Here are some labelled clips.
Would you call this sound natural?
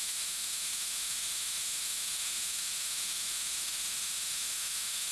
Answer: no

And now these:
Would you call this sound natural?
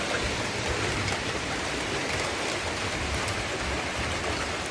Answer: yes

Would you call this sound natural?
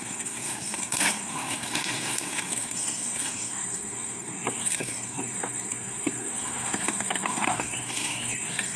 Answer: no